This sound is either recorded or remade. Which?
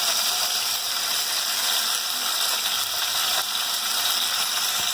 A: remade